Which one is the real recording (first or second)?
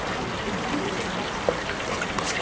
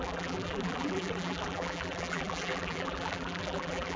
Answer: first